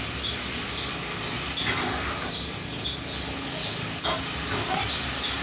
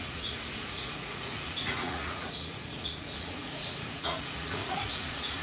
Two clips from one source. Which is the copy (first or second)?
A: second